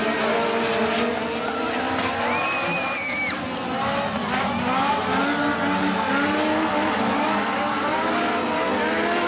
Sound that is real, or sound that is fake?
real